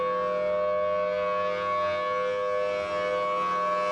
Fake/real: real